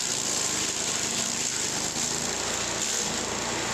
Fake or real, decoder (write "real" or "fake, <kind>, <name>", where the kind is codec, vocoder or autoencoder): real